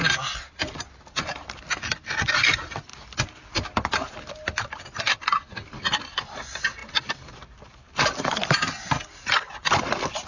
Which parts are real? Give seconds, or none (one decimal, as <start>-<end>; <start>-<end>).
0.0-10.3